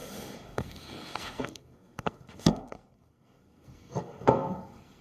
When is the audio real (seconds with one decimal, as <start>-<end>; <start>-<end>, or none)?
none

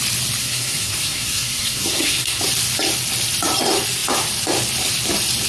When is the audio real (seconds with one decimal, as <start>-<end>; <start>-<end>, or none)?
0.0-0.4; 2.4-5.5

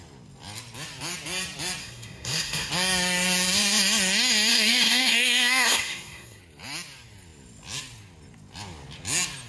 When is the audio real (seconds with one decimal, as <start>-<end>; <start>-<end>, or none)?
0.0-1.8; 2.7-4.5; 6.4-9.5

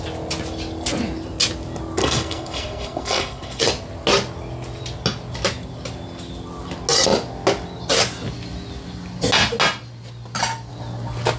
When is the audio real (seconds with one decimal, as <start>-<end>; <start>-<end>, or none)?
0.0-2.0; 3.6-11.4